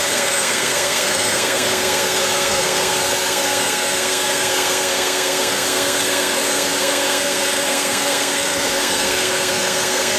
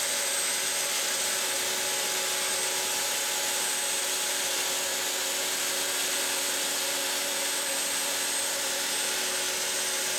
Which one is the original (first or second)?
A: second